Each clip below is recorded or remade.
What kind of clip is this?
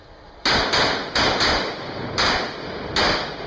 recorded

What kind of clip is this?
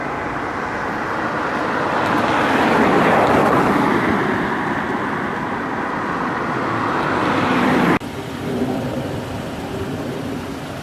recorded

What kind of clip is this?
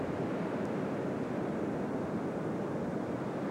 recorded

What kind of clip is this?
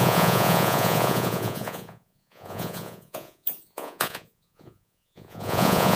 remade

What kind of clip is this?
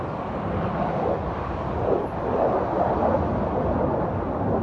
recorded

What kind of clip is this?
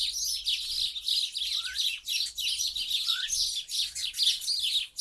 recorded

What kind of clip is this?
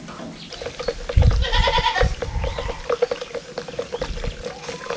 recorded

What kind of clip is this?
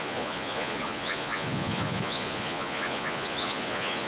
remade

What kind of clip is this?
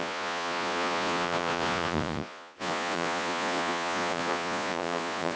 remade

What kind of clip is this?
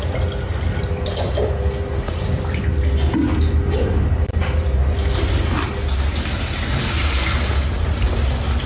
recorded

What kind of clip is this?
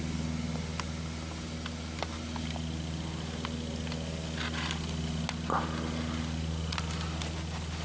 recorded